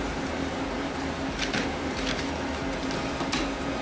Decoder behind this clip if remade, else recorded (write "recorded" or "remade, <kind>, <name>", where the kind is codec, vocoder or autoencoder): remade, vocoder, BigVGAN v2